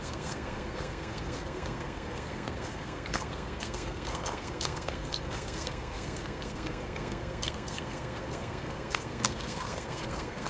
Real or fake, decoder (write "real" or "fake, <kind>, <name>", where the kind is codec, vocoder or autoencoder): fake, codec, SNAC